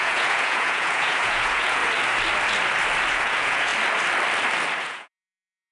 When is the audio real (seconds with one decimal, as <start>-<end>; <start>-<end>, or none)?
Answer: 1.8-3.1; 3.7-4.8